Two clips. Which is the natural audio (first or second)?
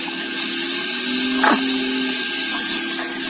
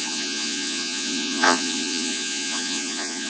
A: first